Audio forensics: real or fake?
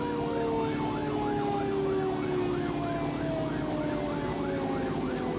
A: real